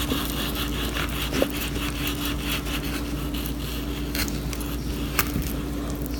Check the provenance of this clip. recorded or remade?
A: recorded